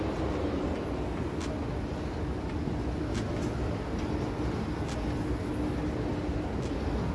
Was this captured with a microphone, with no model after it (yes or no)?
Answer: yes